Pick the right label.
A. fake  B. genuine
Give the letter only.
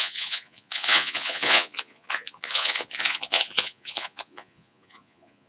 A